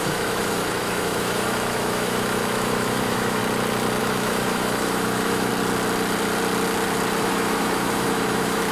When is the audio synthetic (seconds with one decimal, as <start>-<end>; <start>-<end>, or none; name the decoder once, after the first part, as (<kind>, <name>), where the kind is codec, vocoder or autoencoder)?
0.0-3.4 (autoencoder, DAC-VAE); 4.0-5.5; 7.2-8.7